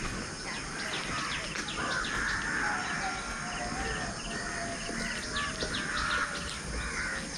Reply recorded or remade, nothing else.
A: recorded